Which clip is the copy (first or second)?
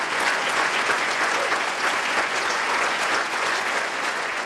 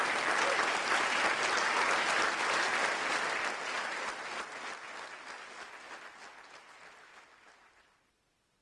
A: first